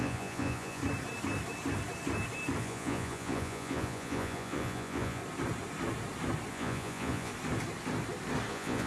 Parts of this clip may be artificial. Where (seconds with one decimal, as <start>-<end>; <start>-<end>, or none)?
0.0-0.8; 2.6-5.2; 6.5-7.3; 8.5-8.9